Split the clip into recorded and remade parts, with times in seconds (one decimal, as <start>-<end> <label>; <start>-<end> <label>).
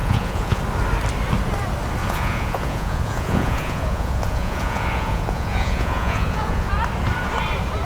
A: 0.0-0.6 remade; 0.6-2.0 recorded; 2.0-6.7 remade; 6.7-7.8 recorded